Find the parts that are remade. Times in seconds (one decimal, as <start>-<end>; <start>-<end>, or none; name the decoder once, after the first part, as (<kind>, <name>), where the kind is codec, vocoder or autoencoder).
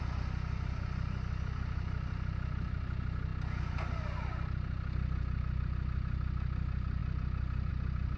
none